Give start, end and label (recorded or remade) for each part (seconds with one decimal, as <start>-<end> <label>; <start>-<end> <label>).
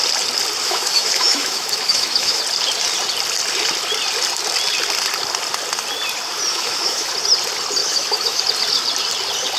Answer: 0.0-0.6 recorded; 0.6-2.4 remade; 2.4-6.5 recorded; 6.5-7.1 remade; 7.1-7.8 recorded; 7.8-8.4 remade; 8.4-9.6 recorded